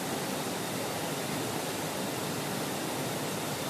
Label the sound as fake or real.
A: real